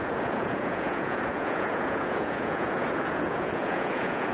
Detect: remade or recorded remade